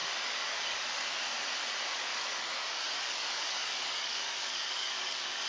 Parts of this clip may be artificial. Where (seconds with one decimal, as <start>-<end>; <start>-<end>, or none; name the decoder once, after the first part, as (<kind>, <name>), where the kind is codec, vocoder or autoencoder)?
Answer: 0.0-1.5 (codec, DAC); 2.1-5.5